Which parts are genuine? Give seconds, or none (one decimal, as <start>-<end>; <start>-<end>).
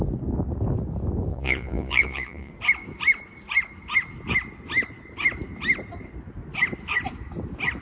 0.0-1.3; 2.5-7.8